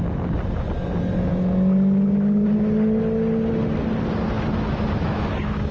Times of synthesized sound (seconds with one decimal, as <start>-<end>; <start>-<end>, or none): none